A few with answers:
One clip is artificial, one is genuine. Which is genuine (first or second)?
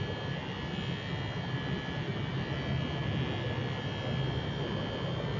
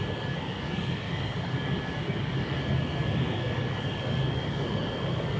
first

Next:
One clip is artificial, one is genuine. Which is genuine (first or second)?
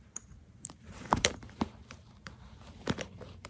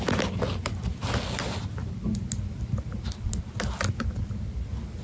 second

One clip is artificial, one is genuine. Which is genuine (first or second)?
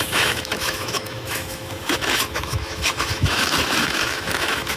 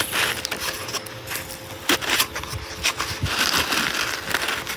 second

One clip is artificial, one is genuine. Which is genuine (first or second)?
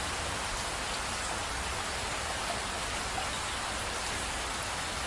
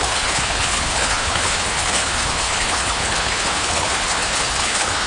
first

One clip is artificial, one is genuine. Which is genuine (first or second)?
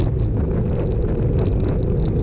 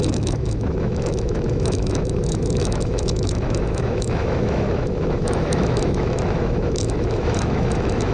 first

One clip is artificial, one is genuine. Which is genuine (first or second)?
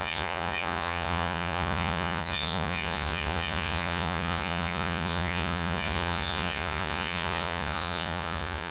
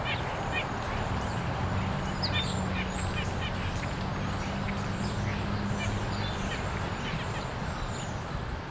second